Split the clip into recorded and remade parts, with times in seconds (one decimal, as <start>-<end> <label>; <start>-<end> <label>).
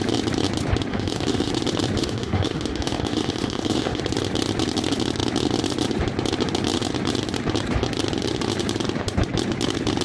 0.0-0.9 recorded; 0.9-1.5 remade; 1.5-2.0 recorded; 2.0-4.0 remade; 4.0-10.0 recorded